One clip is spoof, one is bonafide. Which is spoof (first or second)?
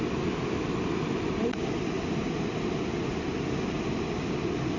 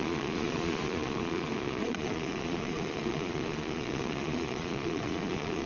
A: second